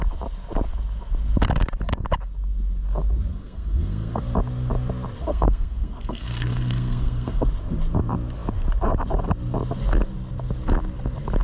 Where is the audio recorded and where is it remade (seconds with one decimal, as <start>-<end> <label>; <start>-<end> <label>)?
0.0-3.3 recorded; 3.3-4.2 remade; 4.2-5.3 recorded; 5.3-7.5 remade; 7.5-11.4 recorded